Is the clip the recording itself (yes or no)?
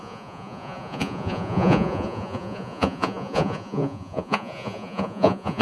no